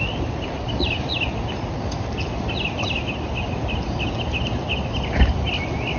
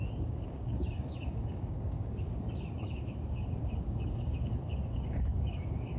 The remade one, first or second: second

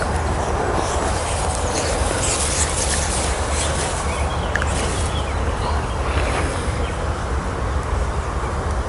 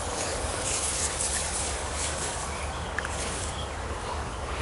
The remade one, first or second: second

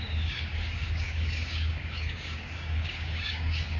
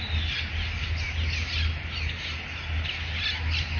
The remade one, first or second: first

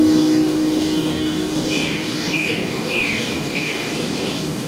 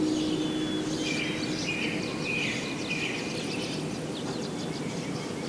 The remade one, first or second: first